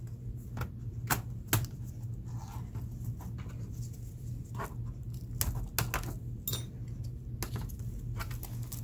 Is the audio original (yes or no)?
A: yes